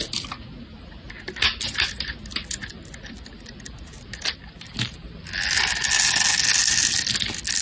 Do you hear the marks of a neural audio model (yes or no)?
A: no